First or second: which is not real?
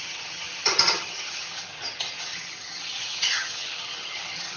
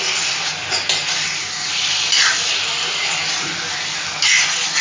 first